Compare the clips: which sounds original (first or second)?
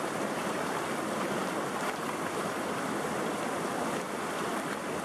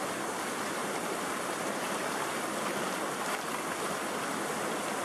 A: second